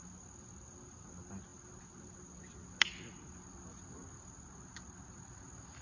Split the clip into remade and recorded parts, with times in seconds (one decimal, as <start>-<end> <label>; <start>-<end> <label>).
0.0-5.8 recorded